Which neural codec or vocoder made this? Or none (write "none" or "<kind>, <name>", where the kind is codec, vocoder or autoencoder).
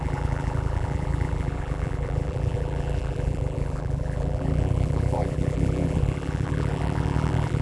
vocoder, BigVGAN v2